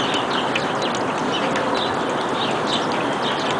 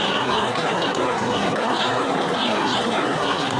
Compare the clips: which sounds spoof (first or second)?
second